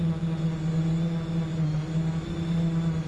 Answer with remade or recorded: recorded